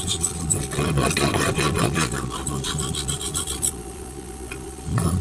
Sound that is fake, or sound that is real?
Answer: fake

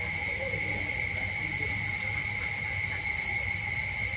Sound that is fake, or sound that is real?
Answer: real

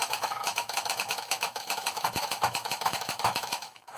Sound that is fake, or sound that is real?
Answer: fake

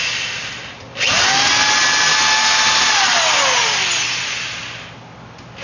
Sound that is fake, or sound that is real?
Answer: real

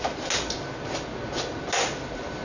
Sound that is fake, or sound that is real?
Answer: real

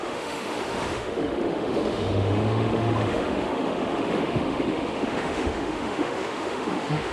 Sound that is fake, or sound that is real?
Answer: fake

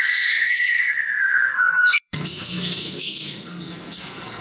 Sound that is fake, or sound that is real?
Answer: fake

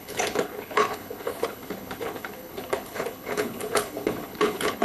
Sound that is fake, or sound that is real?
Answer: fake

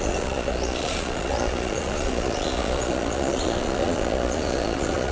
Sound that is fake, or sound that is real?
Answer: fake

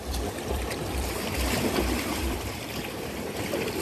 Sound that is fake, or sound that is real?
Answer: fake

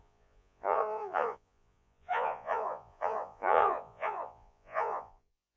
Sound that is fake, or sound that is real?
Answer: fake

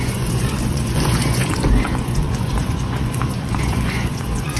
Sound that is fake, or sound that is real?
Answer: fake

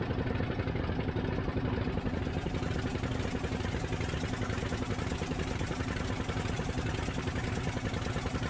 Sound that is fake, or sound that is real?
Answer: real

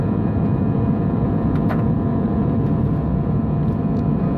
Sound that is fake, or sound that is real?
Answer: fake